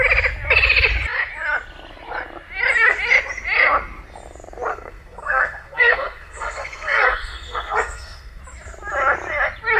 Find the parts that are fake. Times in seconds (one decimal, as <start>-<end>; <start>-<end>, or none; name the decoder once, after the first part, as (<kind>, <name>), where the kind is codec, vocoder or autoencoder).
4.7-8.4 (codec, SNAC)